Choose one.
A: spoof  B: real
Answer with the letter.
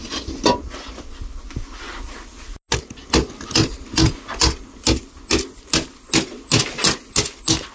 B